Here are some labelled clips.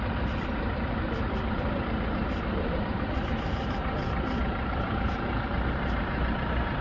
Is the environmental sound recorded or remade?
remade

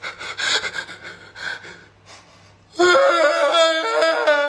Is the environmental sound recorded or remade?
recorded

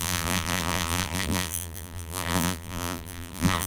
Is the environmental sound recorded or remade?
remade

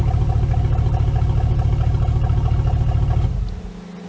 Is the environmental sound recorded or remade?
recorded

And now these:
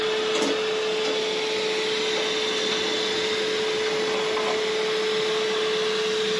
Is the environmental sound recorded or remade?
recorded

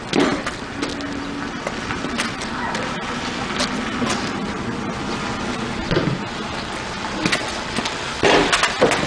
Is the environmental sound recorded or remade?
recorded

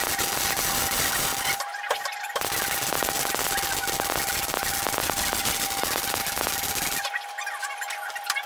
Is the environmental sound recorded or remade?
recorded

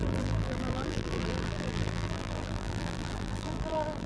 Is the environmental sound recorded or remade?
remade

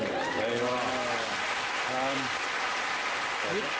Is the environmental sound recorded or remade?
recorded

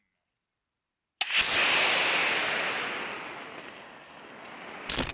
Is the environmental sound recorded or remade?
recorded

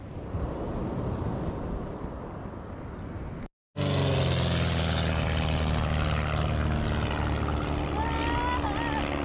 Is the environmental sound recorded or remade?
recorded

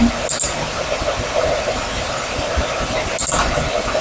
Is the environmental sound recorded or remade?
recorded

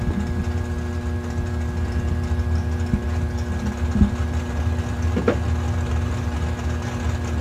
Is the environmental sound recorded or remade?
recorded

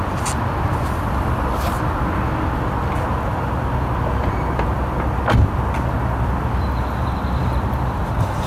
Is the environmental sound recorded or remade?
recorded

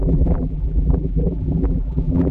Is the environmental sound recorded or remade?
remade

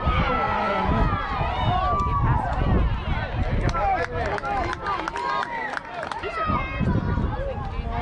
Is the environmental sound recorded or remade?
recorded